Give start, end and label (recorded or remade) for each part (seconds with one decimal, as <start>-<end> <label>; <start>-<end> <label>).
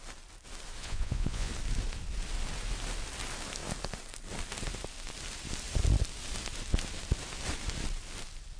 0.0-0.8 recorded; 0.8-1.5 remade; 1.5-8.6 recorded